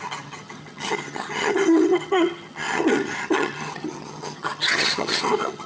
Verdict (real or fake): fake